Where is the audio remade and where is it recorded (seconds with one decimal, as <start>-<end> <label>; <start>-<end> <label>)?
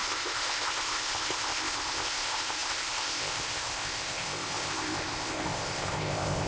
0.0-6.5 remade